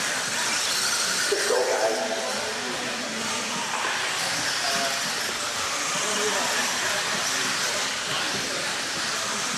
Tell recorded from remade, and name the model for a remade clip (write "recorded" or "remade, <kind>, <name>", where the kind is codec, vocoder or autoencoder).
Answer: recorded